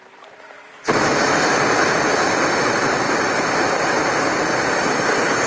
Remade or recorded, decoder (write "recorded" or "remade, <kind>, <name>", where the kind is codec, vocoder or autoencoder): remade, vocoder, BigVGAN v2